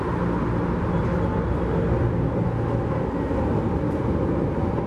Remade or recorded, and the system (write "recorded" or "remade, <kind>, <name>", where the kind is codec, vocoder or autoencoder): recorded